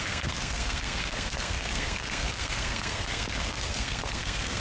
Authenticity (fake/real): fake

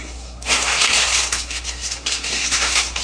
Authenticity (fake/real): fake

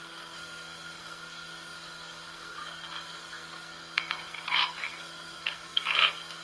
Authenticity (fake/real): fake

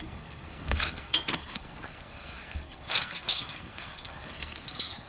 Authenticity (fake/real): fake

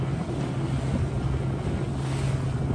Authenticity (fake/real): real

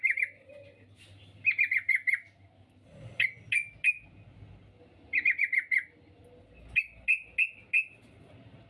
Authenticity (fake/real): real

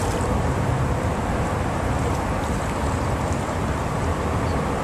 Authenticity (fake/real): real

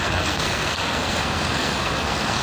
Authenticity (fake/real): fake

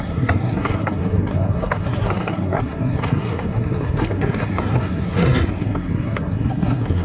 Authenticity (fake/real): fake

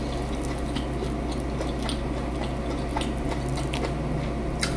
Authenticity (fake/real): real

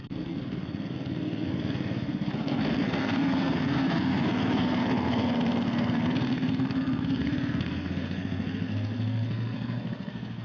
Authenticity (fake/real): fake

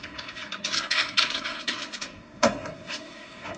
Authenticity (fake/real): fake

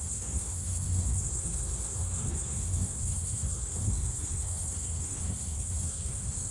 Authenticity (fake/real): fake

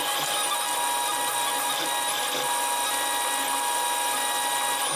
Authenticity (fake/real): real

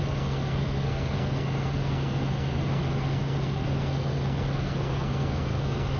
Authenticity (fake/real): fake